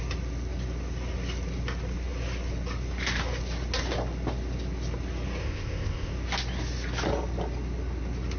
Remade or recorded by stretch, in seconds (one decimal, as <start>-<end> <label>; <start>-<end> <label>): 0.0-5.4 recorded; 5.4-6.1 remade; 6.1-8.4 recorded